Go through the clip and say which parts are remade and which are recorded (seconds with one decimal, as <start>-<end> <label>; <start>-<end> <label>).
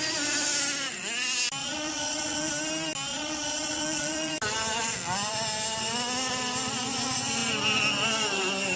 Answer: 0.0-1.6 recorded; 1.6-2.5 remade; 2.5-3.1 recorded; 3.1-4.3 remade; 4.3-8.8 recorded